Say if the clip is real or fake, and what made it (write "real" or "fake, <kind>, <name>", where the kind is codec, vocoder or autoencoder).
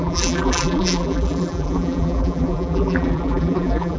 fake, vocoder, BigVGAN v2